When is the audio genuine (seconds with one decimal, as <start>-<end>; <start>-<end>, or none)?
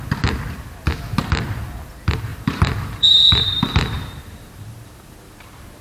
0.0-2.3